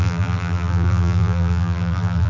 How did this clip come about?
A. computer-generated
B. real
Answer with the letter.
A